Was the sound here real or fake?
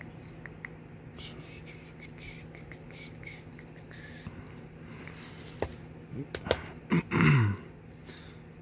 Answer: real